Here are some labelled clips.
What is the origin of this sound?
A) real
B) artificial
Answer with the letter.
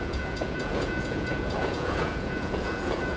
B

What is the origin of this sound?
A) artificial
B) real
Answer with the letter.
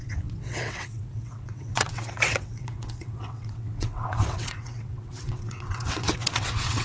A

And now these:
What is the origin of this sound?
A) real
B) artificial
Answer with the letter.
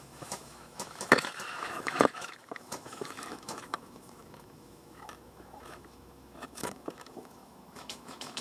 B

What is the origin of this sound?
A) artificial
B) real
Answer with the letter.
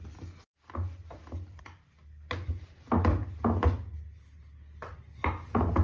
B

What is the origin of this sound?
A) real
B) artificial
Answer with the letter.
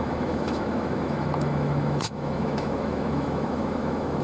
B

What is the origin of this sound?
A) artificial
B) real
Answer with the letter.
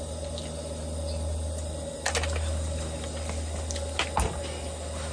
B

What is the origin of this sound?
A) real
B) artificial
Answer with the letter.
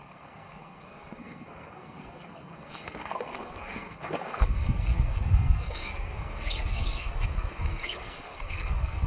B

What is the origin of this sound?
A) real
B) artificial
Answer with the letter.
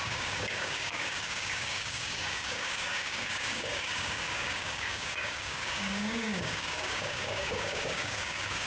B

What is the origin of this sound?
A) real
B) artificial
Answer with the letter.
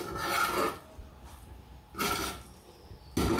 A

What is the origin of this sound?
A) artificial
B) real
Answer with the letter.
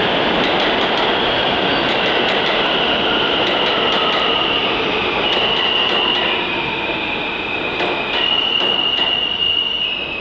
B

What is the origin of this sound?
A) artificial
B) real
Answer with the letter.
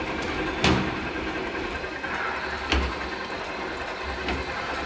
B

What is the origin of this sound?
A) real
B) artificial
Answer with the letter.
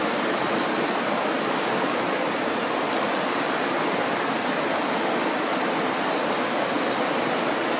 A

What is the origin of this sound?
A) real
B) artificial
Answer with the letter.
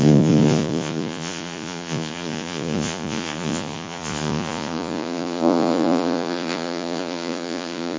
B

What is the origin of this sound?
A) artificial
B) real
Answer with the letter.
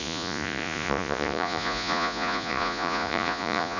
A